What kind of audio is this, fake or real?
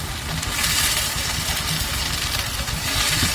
real